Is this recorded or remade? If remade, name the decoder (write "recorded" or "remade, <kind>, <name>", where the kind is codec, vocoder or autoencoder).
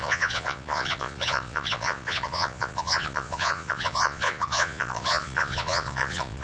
remade, vocoder, Vocos